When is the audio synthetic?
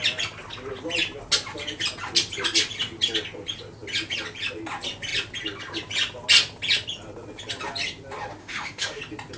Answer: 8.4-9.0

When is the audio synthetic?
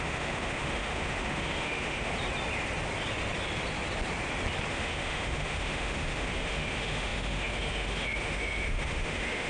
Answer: 0.0-2.1; 4.7-9.5